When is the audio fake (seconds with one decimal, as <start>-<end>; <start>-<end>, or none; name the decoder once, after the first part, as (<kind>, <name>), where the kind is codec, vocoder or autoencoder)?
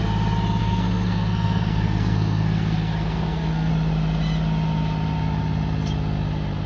0.6-3.7 (codec, SNAC)